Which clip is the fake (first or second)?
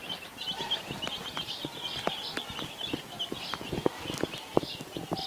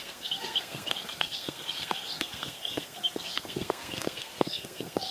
second